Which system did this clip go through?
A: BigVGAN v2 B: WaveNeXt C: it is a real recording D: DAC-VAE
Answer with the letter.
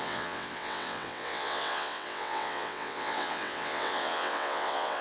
B